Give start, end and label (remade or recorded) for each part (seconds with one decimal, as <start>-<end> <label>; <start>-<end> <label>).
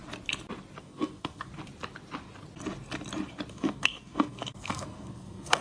0.0-0.8 recorded; 0.8-1.5 remade; 1.5-3.5 recorded; 3.5-5.6 remade